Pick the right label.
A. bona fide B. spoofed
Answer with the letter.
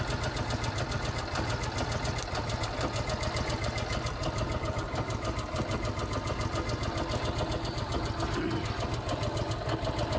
A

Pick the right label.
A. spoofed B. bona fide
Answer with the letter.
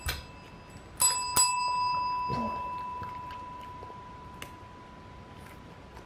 B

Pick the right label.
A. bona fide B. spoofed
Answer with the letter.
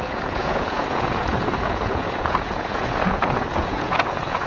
B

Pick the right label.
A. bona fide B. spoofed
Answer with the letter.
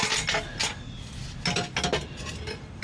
A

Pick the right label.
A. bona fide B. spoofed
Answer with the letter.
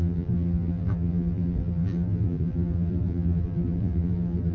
B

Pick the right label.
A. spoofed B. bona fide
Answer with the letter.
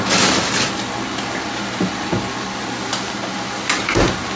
B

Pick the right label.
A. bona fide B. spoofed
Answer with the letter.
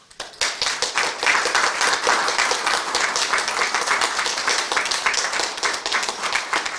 A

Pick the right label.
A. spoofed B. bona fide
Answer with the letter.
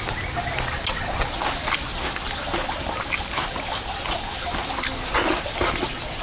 B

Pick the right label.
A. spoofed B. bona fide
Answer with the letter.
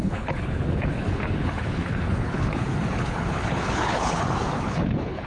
A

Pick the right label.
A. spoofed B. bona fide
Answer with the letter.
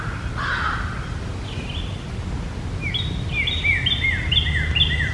B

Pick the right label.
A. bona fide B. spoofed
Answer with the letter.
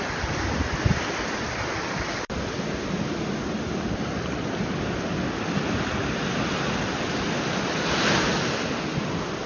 A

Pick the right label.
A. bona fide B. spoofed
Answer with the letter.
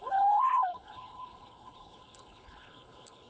B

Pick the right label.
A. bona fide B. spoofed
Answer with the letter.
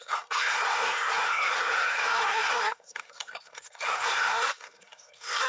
B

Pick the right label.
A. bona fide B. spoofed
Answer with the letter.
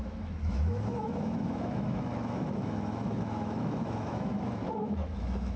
B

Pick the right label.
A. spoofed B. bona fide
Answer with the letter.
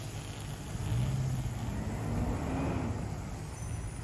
B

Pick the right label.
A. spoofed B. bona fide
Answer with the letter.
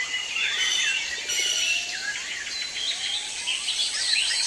B